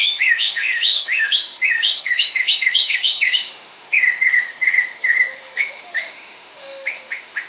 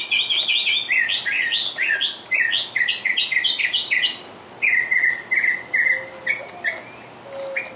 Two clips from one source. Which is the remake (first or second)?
first